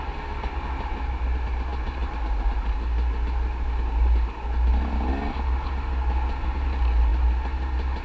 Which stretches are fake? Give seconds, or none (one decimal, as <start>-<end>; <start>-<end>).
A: none